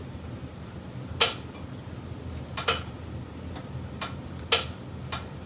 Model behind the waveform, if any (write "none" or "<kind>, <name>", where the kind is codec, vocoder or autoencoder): none